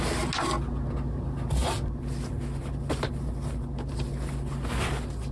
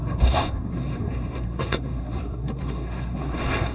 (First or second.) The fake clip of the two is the second